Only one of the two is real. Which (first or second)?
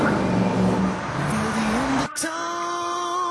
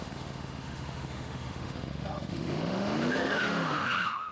first